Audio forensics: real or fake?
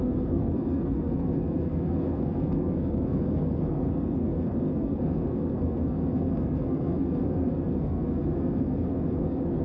fake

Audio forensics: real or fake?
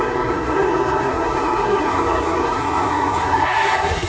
fake